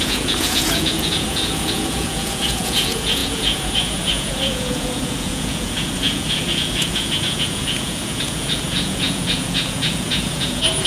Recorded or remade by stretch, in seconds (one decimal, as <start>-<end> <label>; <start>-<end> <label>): 0.0-10.9 remade